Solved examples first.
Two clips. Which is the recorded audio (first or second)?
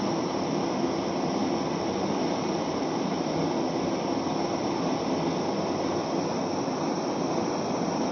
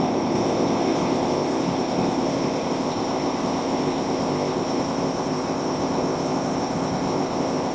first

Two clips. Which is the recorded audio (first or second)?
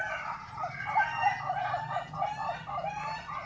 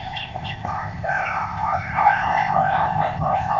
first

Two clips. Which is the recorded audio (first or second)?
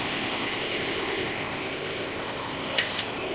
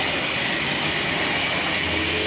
second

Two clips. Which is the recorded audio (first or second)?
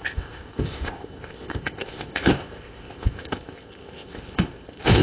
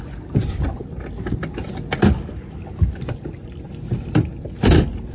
second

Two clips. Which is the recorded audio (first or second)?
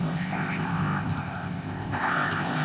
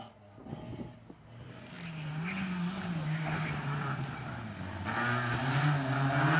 second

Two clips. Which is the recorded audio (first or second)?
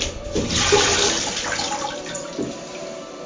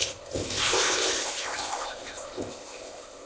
first